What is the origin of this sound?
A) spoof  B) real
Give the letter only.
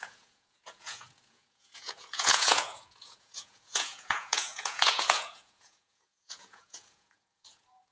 A